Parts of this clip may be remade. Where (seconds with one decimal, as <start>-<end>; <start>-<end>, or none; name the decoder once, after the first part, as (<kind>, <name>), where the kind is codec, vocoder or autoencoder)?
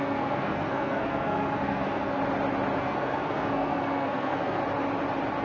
0.0-2.2 (codec, SNAC); 2.8-4.6